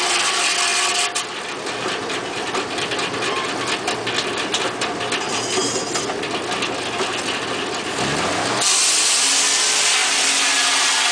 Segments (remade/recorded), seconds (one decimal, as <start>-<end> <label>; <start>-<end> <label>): 0.0-0.7 recorded; 0.7-2.9 remade; 2.9-10.0 recorded; 10.0-10.5 remade; 10.5-11.1 recorded